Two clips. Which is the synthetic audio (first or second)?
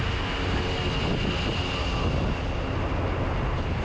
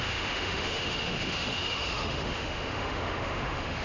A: second